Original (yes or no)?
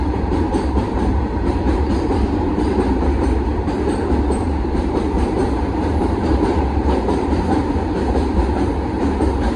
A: no